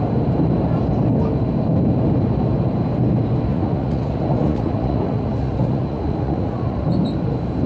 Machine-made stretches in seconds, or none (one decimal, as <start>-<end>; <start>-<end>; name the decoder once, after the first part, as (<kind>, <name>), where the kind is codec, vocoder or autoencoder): 3.5-6.8 (vocoder, Vocos)